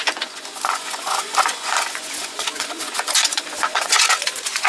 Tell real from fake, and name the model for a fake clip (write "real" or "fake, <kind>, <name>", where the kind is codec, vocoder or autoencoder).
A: fake, vocoder, Vocos